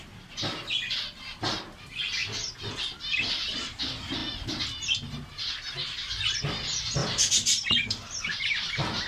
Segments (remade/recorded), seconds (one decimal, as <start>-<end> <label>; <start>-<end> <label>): 0.0-2.2 recorded; 2.2-3.8 remade; 3.8-7.0 recorded; 7.0-8.7 remade; 8.7-9.1 recorded